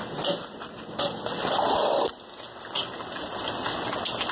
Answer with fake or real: real